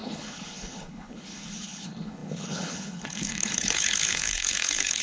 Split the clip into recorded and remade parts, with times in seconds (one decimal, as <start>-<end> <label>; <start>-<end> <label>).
0.0-5.0 remade